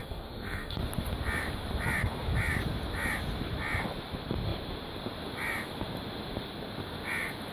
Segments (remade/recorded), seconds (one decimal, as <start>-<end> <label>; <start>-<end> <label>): 0.0-0.8 remade; 0.8-7.5 recorded